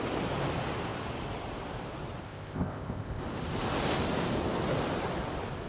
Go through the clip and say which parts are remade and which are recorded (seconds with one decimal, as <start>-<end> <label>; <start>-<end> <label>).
0.0-2.2 recorded; 2.2-3.2 remade; 3.2-5.7 recorded